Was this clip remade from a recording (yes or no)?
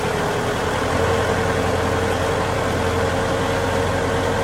no